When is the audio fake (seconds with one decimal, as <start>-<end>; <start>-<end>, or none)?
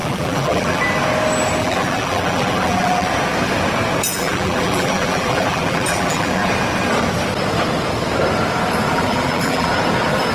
0.0-0.8; 1.6-3.1; 4.1-6.5; 8.9-9.7